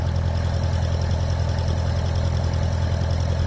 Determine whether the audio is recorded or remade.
recorded